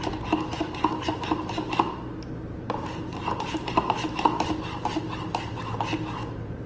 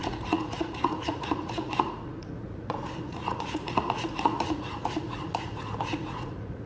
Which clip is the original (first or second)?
first